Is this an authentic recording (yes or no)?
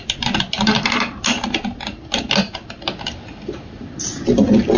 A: yes